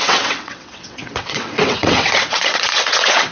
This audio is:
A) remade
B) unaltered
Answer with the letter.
A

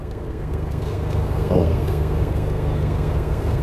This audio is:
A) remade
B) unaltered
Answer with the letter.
A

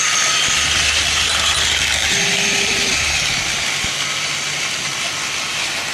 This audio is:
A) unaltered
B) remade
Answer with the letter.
A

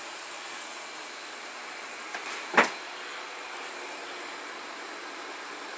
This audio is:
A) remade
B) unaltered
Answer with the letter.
B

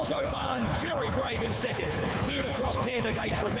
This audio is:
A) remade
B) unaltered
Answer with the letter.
A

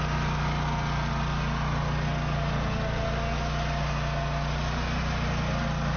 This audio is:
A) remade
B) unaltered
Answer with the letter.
B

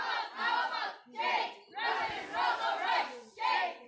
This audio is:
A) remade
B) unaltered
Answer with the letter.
B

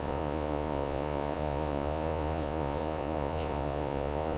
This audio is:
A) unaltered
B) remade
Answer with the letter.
B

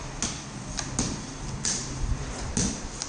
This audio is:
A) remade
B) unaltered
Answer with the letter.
B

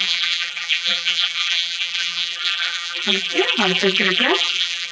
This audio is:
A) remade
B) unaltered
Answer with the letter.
A